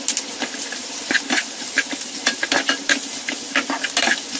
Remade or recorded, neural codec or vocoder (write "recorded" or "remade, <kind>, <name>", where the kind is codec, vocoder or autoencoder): recorded